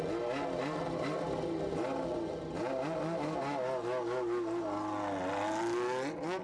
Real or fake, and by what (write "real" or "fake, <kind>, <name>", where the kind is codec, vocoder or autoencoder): real